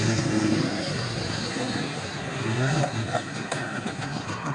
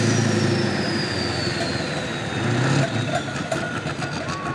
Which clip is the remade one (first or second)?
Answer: first